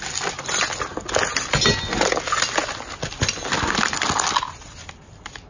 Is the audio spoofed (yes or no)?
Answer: no